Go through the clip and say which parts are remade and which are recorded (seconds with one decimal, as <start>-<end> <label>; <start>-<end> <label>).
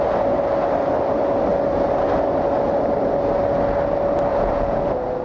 0.0-4.3 recorded; 4.3-4.8 remade; 4.8-5.2 recorded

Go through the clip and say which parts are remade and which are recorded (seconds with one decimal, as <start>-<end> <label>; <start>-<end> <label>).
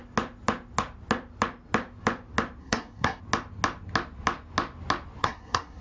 0.0-2.6 recorded; 2.6-3.2 remade; 3.2-5.2 recorded; 5.2-5.8 remade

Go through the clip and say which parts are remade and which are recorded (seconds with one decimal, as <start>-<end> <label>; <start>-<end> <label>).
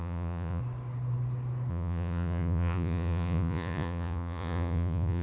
0.0-0.6 remade; 0.6-1.7 recorded; 1.7-5.2 remade